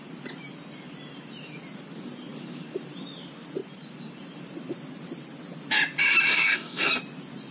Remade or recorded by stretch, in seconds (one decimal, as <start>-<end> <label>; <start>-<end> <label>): 0.0-6.3 recorded; 6.3-7.0 remade; 7.0-7.5 recorded